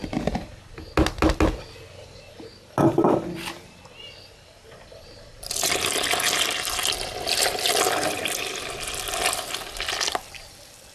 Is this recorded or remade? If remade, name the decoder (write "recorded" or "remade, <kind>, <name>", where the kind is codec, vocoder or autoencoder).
recorded